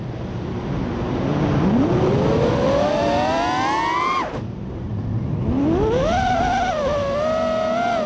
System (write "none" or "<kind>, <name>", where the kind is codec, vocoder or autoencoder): none